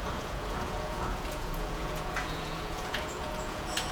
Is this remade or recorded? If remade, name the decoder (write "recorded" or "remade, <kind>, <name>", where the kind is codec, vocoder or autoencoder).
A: remade, vocoder, Vocos